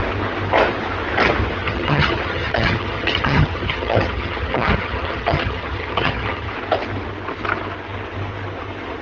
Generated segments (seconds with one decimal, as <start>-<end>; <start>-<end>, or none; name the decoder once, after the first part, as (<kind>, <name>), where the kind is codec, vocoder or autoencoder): 1.6-6.5 (vocoder, HiFi-GAN)